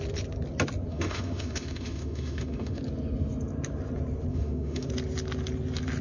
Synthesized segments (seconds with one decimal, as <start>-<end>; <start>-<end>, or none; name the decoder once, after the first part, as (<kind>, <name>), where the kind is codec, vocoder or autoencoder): 0.9-2.8 (autoencoder, DAC-VAE); 4.3-4.9